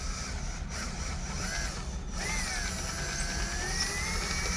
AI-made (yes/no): no